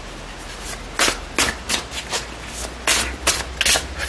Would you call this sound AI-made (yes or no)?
no